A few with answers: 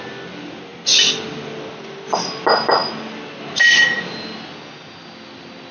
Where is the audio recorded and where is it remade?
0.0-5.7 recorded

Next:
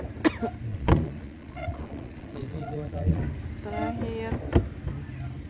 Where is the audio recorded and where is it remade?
0.0-0.7 recorded; 0.7-3.2 remade; 3.2-5.5 recorded

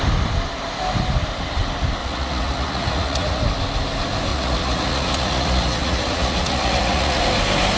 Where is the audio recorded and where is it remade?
0.0-2.0 recorded; 2.0-3.4 remade; 3.4-4.3 recorded; 4.3-7.2 remade; 7.2-7.8 recorded

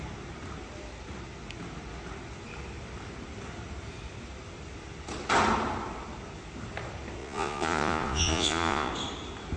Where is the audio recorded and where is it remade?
0.0-7.2 recorded; 7.2-8.9 remade; 8.9-9.6 recorded

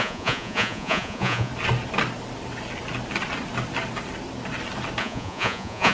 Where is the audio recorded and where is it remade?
0.0-1.5 remade; 1.5-5.0 recorded; 5.0-5.9 remade

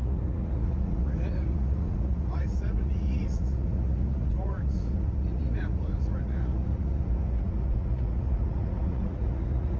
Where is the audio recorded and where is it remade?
0.0-9.8 remade

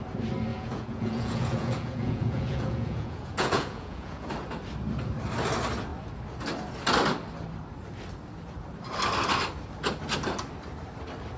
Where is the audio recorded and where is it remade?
0.0-0.5 recorded; 0.5-4.3 remade; 4.3-11.4 recorded

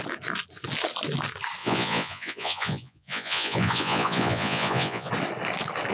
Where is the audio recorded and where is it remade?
0.0-1.6 recorded; 1.6-5.1 remade; 5.1-5.9 recorded